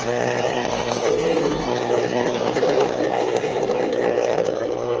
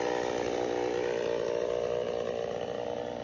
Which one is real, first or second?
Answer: second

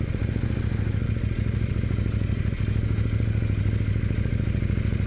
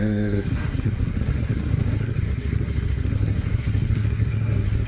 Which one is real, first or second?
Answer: first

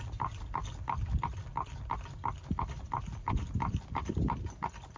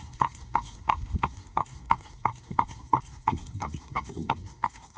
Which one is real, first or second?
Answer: first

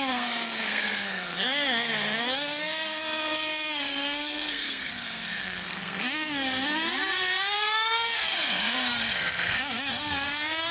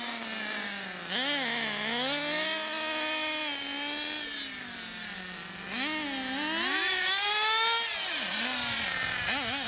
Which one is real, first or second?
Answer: second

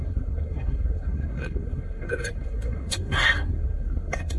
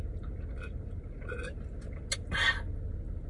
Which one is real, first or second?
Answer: second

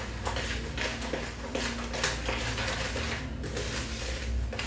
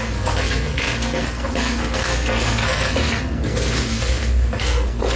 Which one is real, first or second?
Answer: first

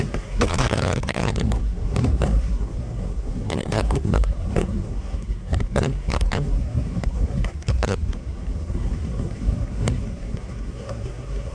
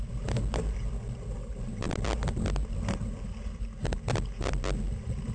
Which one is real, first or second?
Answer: second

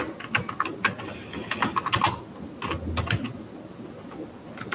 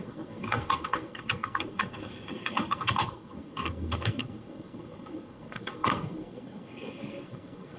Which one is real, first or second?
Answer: first